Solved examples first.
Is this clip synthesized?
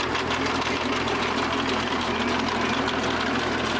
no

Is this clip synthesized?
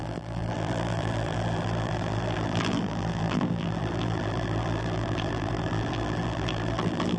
yes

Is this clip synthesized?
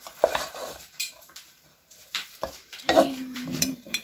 yes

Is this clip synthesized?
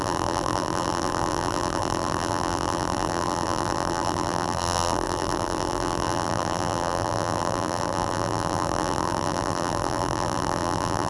yes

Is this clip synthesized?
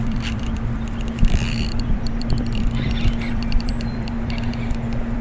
yes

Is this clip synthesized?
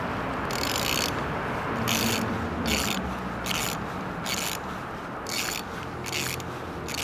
no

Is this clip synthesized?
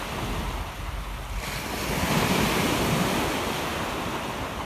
no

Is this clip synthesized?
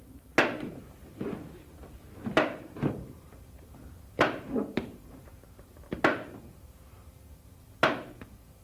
yes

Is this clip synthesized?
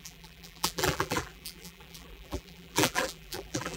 yes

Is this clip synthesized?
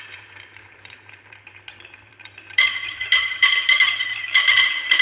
yes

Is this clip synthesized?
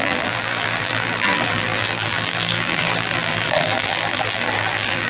yes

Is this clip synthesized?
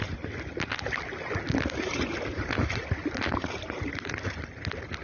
no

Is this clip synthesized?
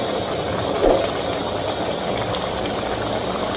no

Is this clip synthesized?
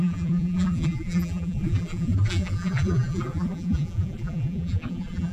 yes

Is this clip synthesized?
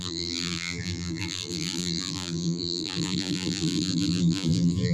yes